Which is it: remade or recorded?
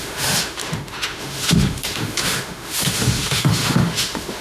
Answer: remade